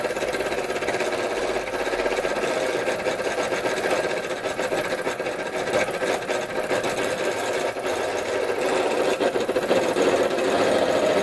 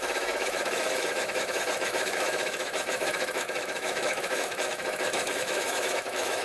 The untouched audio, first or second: first